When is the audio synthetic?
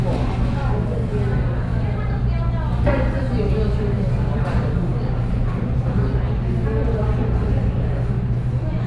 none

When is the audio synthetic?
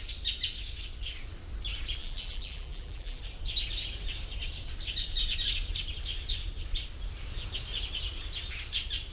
2.0-3.2